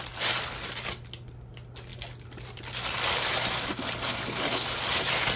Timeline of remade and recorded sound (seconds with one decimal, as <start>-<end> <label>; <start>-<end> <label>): 0.0-5.4 recorded